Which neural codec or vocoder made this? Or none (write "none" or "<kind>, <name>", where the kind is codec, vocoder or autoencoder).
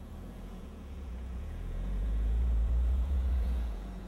vocoder, Vocos